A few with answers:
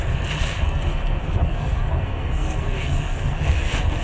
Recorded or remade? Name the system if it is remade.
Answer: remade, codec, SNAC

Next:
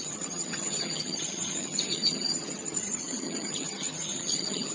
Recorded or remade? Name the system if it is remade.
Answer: remade, vocoder, HiFi-GAN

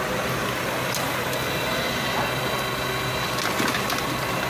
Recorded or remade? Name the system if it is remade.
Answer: recorded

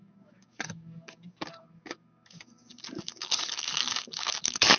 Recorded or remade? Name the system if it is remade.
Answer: remade, codec, DAC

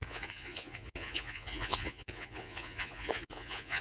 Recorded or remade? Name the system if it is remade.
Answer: remade, vocoder, Vocos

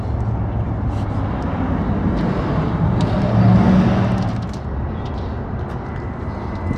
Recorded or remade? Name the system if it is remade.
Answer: recorded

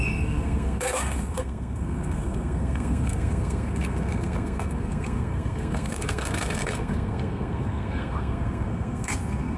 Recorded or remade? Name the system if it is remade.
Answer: remade, codec, SNAC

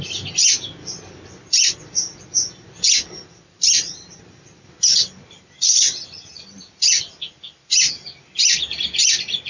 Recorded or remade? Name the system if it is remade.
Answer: recorded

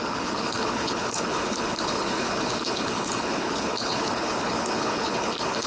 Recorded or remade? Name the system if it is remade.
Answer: remade, codec, HILCodec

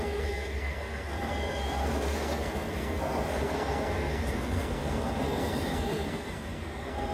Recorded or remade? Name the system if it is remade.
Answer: remade, codec, SNAC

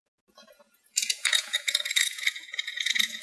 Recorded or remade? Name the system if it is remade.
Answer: remade, vocoder, Vocos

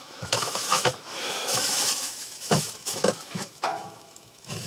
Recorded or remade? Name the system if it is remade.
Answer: remade, autoencoder, DAC-VAE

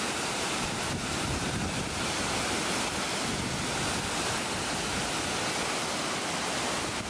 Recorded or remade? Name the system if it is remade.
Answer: recorded